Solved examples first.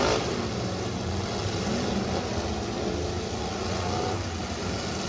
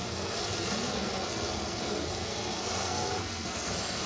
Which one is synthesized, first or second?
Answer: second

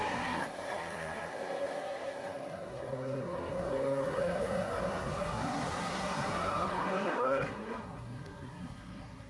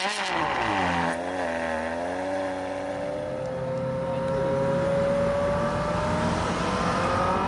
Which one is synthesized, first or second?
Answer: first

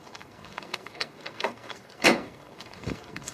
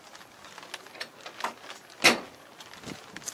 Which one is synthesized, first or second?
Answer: first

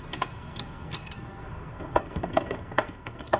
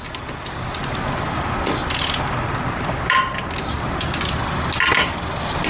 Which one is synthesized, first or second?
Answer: first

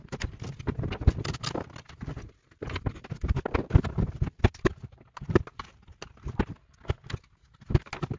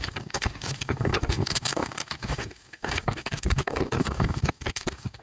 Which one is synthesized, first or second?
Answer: second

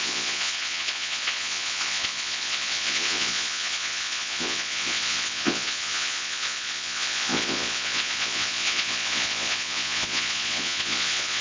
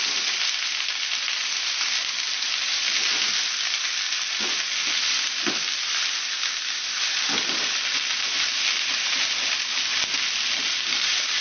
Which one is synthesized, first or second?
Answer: first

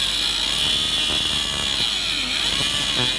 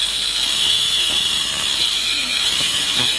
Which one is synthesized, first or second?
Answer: second